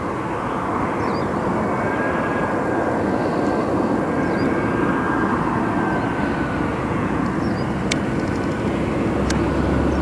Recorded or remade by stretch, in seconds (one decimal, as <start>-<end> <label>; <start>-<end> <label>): 0.0-6.7 recorded; 6.7-7.3 remade; 7.3-10.0 recorded